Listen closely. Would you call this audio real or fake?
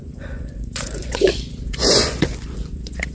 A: fake